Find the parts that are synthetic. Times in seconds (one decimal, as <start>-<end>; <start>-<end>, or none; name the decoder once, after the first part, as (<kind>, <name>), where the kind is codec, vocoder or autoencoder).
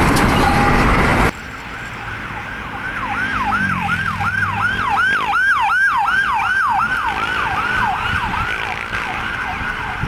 none